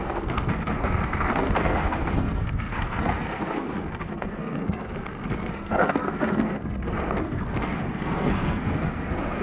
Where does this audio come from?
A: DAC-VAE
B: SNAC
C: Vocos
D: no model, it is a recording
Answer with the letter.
B